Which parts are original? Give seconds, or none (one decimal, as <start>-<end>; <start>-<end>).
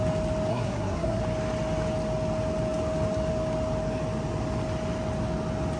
0.0-0.5; 1.2-5.8